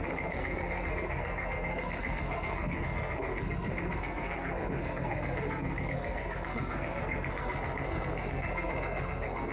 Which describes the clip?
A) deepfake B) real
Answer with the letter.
A